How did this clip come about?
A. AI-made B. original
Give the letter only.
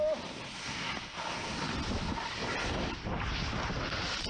B